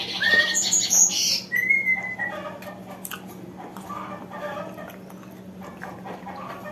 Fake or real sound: real